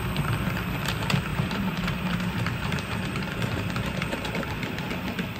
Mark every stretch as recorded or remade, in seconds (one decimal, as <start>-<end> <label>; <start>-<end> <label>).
0.0-1.3 recorded; 1.3-4.3 remade; 4.3-5.4 recorded